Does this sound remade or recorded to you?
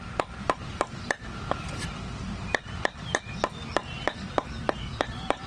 remade